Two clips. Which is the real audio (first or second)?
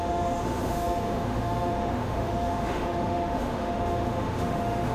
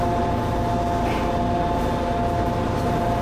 second